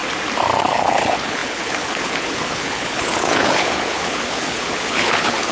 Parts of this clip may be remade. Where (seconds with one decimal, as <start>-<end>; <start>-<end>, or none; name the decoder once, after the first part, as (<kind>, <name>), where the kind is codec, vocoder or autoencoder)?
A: 0.6-5.5 (codec, HILCodec)